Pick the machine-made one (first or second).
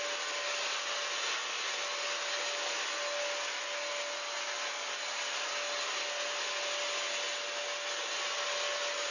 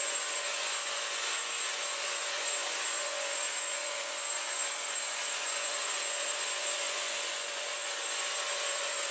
second